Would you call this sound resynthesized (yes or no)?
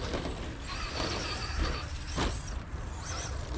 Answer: no